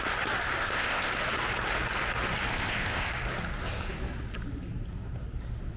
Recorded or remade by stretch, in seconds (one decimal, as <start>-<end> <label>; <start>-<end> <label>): 0.0-0.6 recorded; 0.6-1.1 remade; 1.1-2.5 recorded; 2.5-3.1 remade; 3.1-5.8 recorded